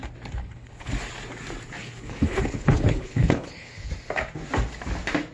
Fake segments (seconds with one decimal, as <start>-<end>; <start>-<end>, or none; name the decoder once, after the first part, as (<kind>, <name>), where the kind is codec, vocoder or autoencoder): 0.4-0.9 (codec, HILCodec); 1.8-3.9